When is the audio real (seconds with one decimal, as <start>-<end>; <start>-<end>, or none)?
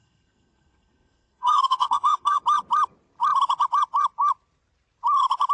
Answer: 2.4-5.5